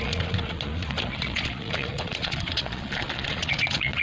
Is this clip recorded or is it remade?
remade